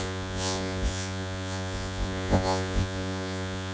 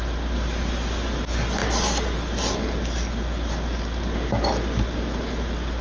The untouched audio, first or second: second